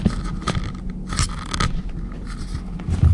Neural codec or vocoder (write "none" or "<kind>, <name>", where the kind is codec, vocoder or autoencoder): none